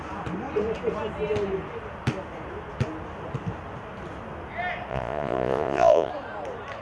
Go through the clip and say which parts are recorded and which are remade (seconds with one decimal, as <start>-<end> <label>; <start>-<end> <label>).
0.0-4.9 recorded; 4.9-6.1 remade; 6.1-6.8 recorded